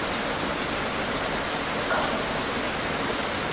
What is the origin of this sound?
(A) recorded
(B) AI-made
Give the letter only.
A